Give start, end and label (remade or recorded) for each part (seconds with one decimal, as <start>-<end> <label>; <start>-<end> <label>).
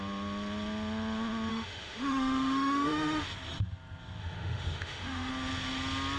0.0-1.5 recorded; 1.5-3.2 remade; 3.2-4.2 recorded; 4.2-5.3 remade; 5.3-6.2 recorded